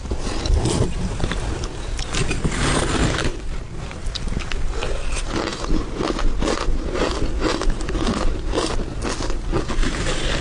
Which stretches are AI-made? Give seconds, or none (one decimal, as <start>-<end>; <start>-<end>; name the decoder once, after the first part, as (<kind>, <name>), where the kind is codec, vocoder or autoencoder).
3.3-3.8 (vocoder, BigVGAN v2); 5.5-6.1

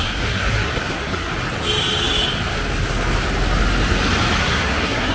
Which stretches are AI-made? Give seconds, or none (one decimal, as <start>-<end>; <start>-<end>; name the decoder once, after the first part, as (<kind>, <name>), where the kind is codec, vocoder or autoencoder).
0.0-1.3 (codec, SNAC); 4.4-5.1

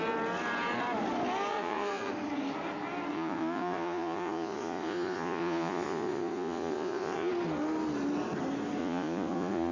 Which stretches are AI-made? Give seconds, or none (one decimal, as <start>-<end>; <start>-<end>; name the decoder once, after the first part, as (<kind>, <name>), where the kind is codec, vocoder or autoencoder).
1.5-2.1 (vocoder, Vocos); 3.1-7.3; 8.8-9.7

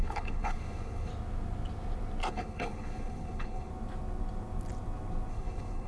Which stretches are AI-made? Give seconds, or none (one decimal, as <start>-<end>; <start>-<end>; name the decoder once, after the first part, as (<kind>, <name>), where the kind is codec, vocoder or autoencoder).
0.0-1.1 (codec, HILCodec); 2.3-3.7; 5.3-5.9

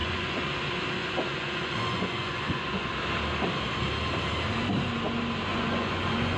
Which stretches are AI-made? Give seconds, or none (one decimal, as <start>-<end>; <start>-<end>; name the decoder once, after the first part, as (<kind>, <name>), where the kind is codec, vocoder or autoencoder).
0.0-0.5 (vocoder, Vocos); 1.0-2.9; 5.5-6.4

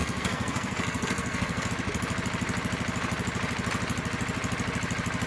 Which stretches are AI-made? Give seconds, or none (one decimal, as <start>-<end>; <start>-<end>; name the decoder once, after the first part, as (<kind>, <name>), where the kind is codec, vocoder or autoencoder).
0.0-1.7 (codec, SNAC)

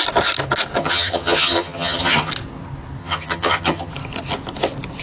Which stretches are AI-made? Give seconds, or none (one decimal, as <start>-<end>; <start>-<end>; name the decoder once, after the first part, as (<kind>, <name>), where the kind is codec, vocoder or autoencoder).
0.8-2.3 (vocoder, HiFi-GAN); 3.0-3.9